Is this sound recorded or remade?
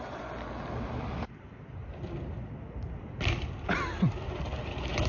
recorded